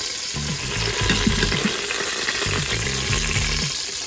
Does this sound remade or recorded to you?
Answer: recorded